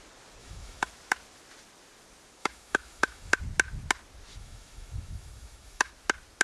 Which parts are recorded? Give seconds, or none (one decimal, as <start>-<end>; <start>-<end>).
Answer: 0.0-0.4; 0.9-2.4; 3.4-4.3; 5.9-6.4

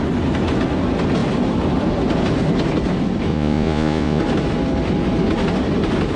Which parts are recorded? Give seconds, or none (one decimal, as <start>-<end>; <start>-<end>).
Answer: 0.0-3.3; 4.2-6.2